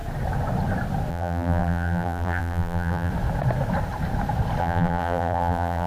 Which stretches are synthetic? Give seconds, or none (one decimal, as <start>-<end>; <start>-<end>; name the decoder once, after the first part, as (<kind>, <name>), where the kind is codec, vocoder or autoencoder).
1.1-3.1 (vocoder, BigVGAN v2); 4.6-5.9